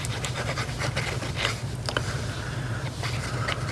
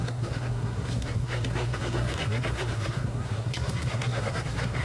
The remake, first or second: second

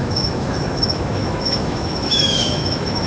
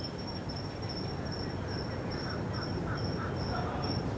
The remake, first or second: first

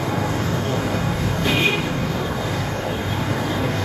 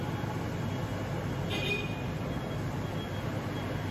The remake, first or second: first